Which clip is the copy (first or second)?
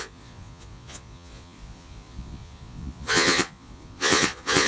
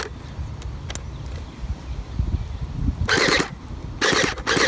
first